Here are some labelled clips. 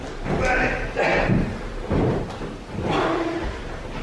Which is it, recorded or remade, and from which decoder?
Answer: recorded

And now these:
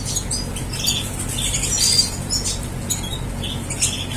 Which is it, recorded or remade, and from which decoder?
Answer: recorded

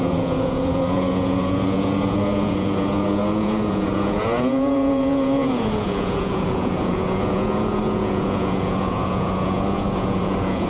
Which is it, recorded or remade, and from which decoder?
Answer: remade, vocoder, Vocos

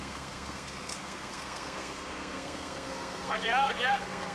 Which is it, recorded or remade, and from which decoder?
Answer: remade, codec, SNAC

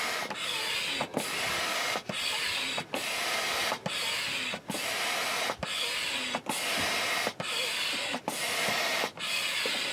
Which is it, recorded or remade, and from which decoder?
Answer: recorded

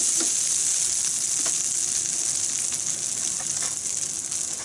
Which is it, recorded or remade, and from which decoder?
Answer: recorded